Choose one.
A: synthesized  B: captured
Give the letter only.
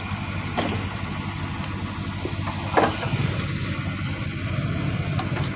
B